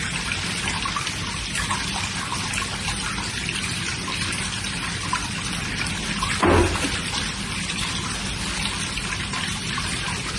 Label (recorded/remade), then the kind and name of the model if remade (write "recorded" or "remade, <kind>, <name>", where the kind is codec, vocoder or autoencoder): recorded